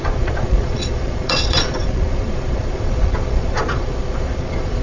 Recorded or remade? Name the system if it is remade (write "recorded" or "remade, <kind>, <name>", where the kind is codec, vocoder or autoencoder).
remade, vocoder, Vocos